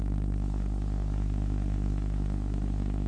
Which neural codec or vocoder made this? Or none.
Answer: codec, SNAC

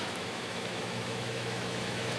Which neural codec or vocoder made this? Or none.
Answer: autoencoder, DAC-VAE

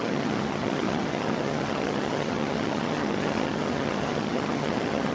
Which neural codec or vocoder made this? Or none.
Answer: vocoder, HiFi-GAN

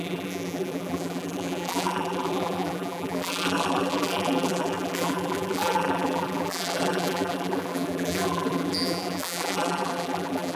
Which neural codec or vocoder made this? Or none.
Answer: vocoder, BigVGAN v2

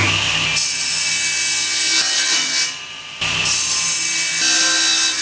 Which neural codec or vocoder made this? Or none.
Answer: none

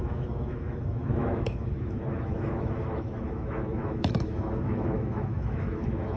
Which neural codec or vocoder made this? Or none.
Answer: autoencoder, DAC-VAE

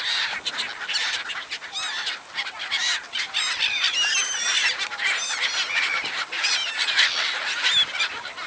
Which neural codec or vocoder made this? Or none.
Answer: none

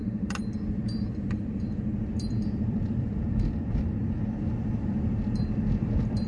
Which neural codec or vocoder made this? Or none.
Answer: vocoder, BigVGAN v2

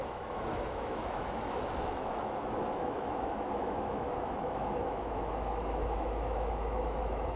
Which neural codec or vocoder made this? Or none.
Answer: autoencoder, DAC-VAE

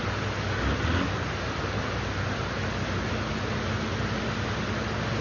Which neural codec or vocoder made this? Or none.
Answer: none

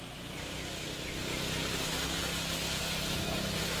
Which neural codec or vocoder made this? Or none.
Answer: none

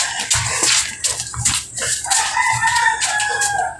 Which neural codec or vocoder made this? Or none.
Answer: none